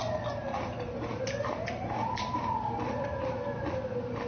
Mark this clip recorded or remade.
recorded